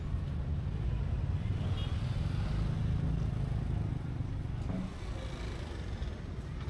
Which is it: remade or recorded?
recorded